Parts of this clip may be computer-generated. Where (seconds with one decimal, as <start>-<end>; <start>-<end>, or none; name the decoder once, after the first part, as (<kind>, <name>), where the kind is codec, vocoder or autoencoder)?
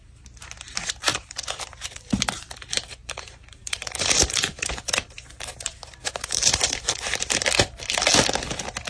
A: 1.1-1.6 (vocoder, BigVGAN v2); 3.0-7.0